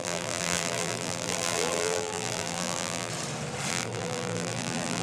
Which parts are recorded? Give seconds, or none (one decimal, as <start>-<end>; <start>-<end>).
3.1-3.7